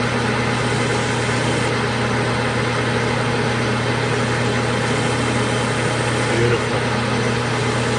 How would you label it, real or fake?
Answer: real